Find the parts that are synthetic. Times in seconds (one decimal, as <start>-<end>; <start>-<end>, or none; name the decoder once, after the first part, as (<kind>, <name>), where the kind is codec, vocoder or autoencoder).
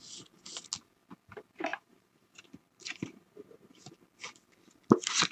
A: 1.7-3.8 (vocoder, BigVGAN v2)